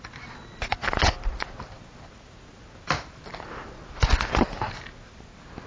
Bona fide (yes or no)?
yes